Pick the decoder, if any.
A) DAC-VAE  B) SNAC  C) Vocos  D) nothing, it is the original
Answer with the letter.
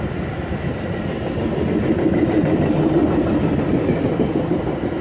D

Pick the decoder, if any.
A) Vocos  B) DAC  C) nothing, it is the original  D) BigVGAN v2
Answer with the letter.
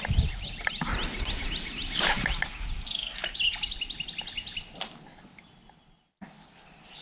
C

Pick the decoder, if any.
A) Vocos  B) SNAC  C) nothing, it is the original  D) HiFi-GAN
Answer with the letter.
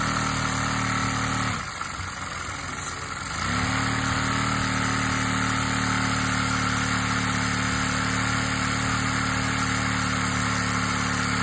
C